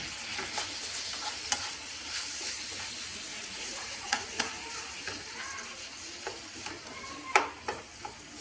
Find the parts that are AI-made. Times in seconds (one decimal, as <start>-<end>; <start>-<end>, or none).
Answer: 3.3-4.4